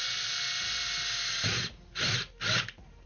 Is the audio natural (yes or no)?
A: yes